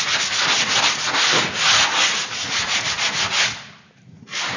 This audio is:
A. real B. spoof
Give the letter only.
A